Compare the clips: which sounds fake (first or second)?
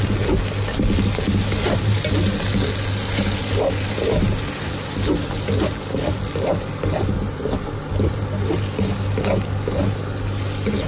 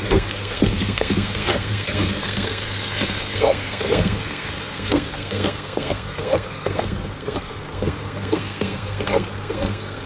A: second